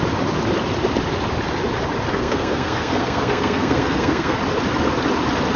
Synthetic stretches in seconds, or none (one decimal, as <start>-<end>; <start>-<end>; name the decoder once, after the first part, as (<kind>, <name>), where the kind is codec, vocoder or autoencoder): 2.1-4.4 (codec, SNAC)